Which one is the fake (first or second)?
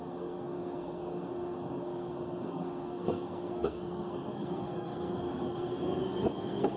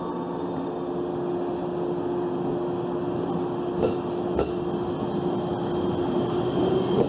first